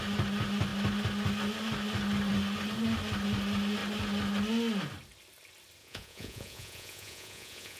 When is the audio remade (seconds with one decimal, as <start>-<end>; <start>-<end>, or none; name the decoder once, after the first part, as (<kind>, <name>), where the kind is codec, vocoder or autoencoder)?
5.8-7.8 (vocoder, Vocos)